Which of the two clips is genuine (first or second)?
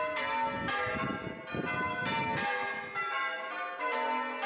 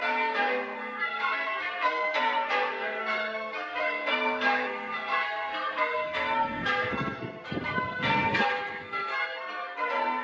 first